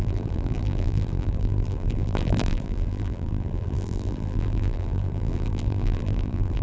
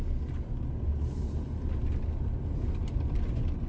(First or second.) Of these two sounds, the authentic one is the second